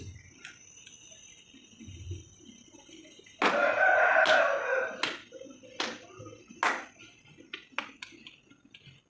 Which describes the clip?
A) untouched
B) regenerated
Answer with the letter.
A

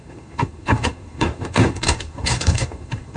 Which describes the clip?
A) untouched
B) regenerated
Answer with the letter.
B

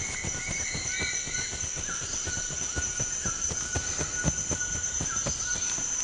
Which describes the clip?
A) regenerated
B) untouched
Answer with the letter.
B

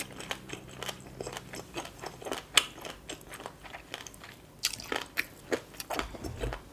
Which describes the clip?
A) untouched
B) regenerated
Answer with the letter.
A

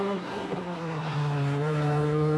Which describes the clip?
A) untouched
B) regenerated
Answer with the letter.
B